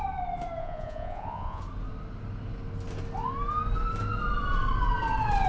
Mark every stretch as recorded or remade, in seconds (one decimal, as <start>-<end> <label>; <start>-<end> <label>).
0.0-0.6 recorded; 0.6-1.6 remade; 1.6-5.5 recorded